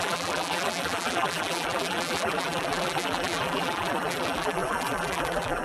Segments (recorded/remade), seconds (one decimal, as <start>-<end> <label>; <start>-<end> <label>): 0.0-5.6 remade